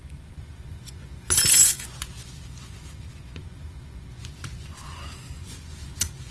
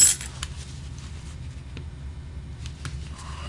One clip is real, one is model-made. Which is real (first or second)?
second